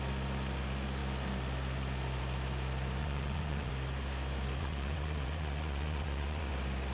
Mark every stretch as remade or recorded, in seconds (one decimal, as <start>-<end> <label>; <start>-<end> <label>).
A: 0.0-3.0 recorded; 3.0-3.7 remade; 3.7-4.6 recorded; 4.6-6.5 remade; 6.5-6.9 recorded